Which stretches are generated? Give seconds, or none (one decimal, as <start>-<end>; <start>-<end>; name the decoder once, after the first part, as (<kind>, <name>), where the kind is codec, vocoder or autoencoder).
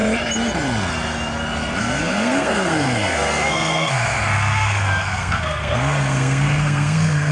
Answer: 1.8-7.3 (codec, SNAC)